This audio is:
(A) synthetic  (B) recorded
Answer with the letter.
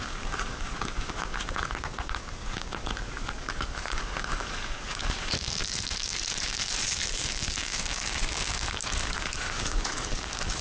A